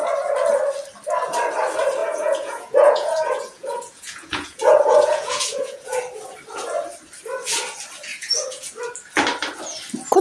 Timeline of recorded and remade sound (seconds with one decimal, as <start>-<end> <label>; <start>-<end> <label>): 0.0-2.0 recorded; 2.0-6.0 remade; 6.0-8.1 recorded; 8.1-8.7 remade; 8.7-10.2 recorded